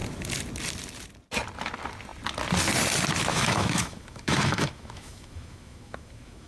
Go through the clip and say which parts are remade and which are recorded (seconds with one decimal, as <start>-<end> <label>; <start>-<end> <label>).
0.0-3.3 recorded; 3.3-6.5 remade